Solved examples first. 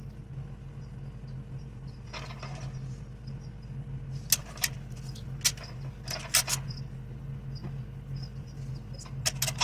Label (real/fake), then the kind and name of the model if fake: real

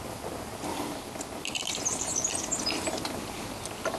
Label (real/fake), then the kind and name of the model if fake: real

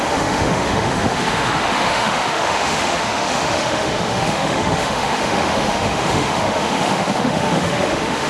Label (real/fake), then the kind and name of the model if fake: fake, autoencoder, DAC-VAE